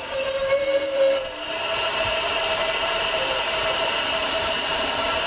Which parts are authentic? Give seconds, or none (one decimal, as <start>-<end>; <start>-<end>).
none